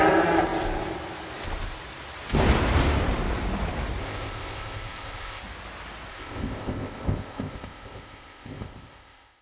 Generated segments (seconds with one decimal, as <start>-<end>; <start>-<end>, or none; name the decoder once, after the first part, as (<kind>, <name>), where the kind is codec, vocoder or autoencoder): 4.0-5.4 (codec, ZipCodec); 6.1-9.4